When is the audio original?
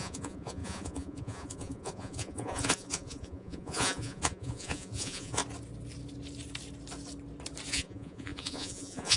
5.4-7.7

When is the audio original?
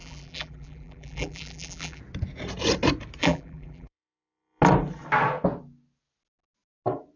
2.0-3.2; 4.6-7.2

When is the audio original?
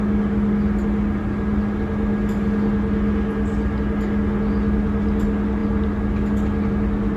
0.0-7.2